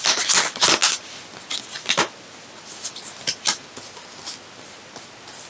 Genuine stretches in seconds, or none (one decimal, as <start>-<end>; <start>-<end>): 0.0-5.5